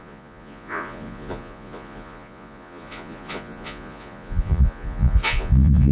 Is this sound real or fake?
fake